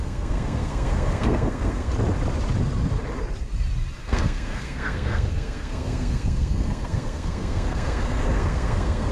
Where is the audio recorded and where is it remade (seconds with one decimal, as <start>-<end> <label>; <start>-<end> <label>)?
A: 0.0-1.9 remade; 1.9-4.0 recorded; 4.0-9.1 remade